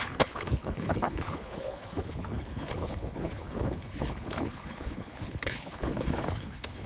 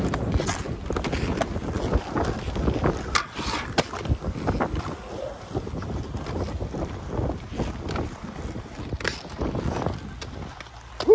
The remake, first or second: first